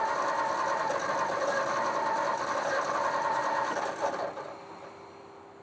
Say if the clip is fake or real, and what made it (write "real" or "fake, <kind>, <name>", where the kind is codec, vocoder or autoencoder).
real